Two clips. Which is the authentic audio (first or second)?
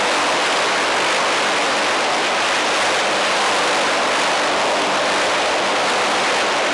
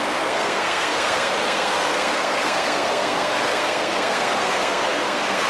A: first